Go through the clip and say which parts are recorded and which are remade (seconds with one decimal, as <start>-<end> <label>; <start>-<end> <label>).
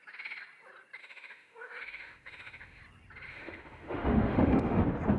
0.0-1.0 recorded; 1.0-2.8 remade; 2.8-3.3 recorded; 3.3-4.8 remade; 4.8-5.2 recorded